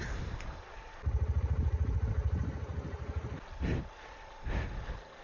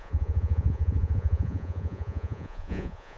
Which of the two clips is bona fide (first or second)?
first